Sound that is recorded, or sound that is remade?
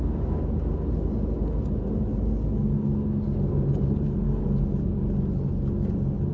recorded